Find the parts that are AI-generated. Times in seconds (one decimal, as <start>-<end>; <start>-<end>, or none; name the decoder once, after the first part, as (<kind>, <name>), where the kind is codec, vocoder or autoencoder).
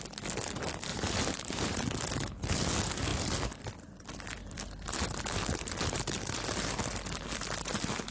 0.9-1.8 (vocoder, BigVGAN v2)